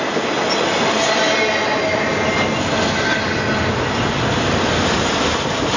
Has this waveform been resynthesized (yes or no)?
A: no